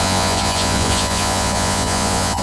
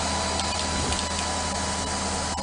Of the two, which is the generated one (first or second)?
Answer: first